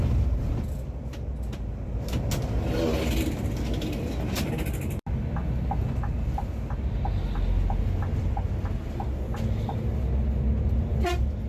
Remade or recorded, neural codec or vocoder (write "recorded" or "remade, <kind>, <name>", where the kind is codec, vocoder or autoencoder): recorded